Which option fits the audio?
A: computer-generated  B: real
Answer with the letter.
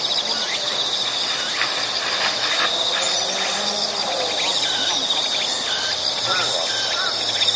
B